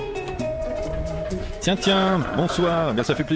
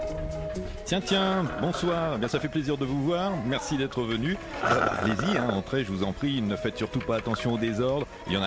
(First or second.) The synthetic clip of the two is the first